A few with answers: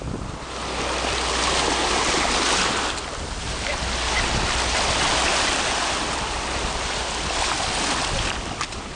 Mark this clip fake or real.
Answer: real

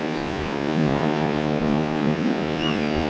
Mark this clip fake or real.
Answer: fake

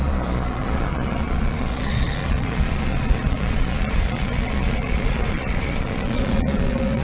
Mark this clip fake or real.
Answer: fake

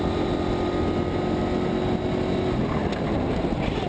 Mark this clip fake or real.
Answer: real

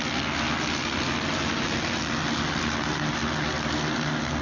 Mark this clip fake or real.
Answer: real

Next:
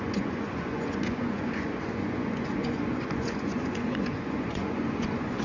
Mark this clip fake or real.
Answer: fake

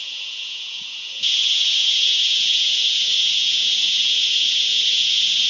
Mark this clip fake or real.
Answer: fake